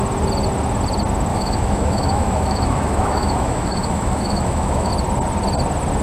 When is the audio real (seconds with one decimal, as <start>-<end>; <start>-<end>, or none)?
0.0-1.3; 4.9-6.0